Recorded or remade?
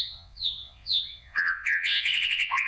remade